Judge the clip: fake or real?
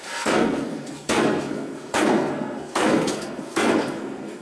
fake